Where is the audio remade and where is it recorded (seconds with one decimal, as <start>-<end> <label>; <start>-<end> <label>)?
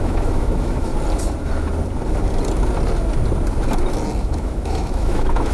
0.0-0.9 remade; 0.9-4.2 recorded; 4.2-5.5 remade